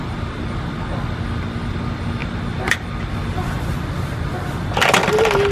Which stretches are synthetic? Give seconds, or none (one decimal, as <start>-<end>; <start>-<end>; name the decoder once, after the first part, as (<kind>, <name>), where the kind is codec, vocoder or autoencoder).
none